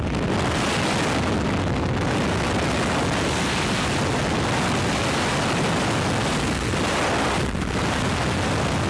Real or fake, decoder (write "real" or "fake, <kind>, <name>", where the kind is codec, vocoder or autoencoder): real